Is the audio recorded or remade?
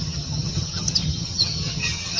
remade